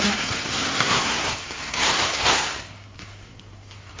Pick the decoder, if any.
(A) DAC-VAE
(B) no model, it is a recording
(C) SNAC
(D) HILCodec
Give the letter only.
C